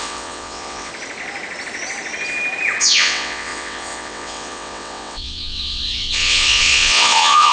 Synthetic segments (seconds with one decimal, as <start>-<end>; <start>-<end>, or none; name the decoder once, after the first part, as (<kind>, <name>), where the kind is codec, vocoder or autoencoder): 0.0-0.9 (vocoder, WaveNeXt); 2.8-7.5